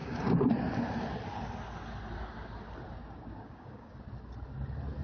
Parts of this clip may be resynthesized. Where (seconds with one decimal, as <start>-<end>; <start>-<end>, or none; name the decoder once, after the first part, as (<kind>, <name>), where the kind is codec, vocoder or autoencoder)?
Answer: 0.0-0.5 (codec, DAC); 3.0-3.9